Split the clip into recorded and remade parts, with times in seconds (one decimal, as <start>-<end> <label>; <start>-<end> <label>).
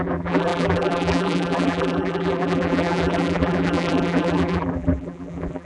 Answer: 0.0-5.7 remade